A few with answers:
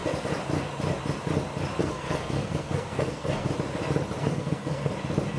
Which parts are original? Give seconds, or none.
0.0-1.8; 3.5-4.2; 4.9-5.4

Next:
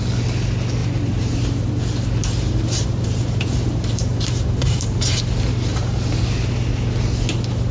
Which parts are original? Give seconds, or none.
0.0-0.8; 5.2-5.7; 6.3-7.7

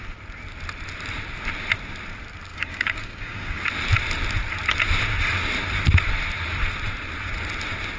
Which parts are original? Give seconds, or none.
0.0-2.5; 3.6-8.0